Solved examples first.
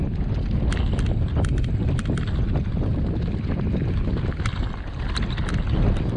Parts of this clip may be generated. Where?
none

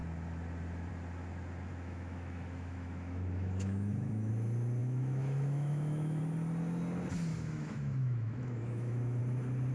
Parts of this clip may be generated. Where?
1.7-4.3 (autoencoder, DAC-VAE); 4.8-6.2; 7.3-9.2